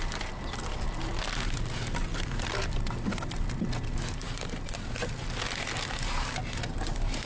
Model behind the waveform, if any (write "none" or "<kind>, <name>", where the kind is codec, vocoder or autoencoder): none